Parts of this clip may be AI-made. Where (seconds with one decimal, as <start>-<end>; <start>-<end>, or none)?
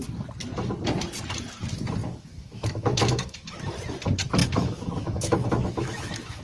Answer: 2.0-3.6; 4.4-6.4